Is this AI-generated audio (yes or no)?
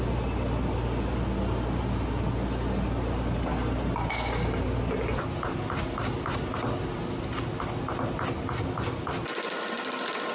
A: no